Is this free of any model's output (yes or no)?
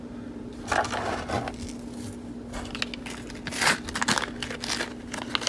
yes